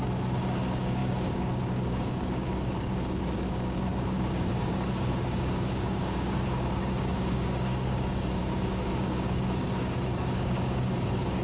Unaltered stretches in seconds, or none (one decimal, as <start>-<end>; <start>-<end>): none